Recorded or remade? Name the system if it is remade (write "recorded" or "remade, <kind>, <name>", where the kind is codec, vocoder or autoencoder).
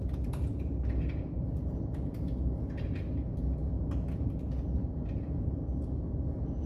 recorded